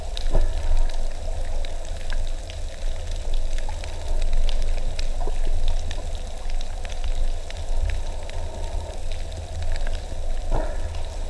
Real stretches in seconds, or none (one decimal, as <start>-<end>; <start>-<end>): 0.0-11.3